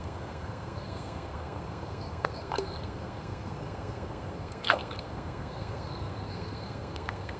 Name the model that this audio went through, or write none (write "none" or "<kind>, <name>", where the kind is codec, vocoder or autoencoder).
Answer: codec, SNAC